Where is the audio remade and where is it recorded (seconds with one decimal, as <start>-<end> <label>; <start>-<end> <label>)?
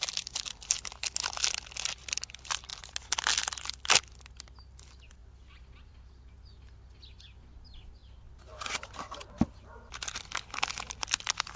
0.0-11.6 recorded